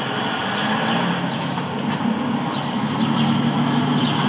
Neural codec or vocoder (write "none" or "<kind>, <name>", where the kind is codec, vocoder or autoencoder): none